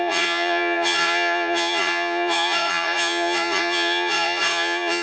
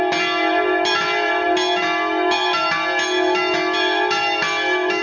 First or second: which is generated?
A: first